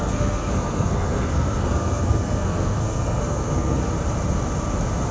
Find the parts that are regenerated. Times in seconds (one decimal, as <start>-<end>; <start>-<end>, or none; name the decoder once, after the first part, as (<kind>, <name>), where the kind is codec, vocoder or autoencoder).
0.0-3.8 (codec, SNAC)